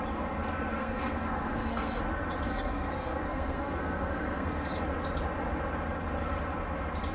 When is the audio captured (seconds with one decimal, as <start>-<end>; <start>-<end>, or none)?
0.0-0.8; 2.0-2.5; 4.8-7.1